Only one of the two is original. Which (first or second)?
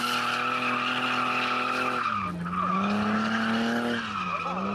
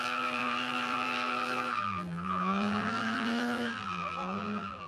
first